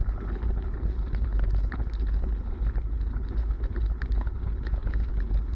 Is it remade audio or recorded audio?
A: remade